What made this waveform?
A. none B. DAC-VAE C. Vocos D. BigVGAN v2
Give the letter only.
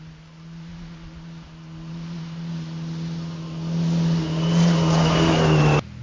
A